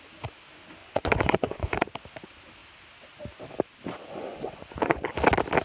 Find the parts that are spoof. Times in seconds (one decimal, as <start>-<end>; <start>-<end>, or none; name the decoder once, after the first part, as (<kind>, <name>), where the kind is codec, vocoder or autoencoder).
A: 0.8-1.9 (vocoder, Vocos); 4.0-5.1

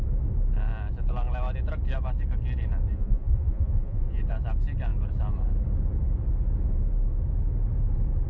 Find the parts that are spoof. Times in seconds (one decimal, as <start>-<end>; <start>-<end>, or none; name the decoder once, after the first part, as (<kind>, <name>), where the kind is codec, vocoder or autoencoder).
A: 2.9-4.2 (vocoder, Vocos)

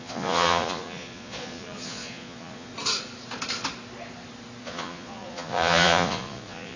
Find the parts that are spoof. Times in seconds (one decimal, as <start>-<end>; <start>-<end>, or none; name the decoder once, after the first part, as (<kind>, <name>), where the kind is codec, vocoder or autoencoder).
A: 0.0-2.7 (vocoder, Vocos); 4.6-6.8

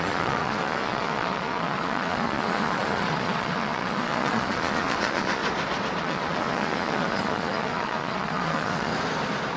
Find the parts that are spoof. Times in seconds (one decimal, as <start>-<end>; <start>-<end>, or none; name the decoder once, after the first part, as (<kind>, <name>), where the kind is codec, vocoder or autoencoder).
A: 0.0-5.4 (vocoder, Vocos); 6.0-8.9